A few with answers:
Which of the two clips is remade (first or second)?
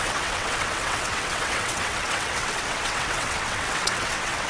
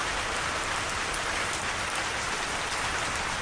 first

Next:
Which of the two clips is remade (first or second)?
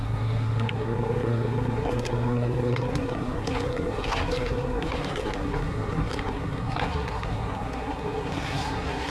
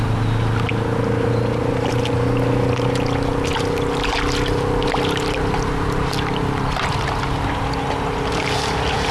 first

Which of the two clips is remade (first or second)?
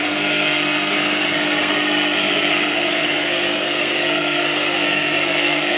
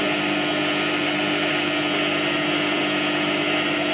first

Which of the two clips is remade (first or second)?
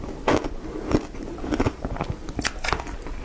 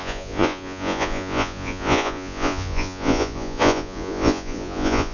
second